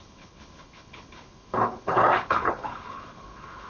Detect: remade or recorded remade